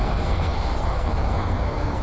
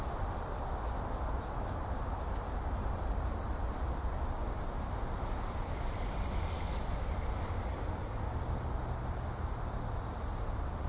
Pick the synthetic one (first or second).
first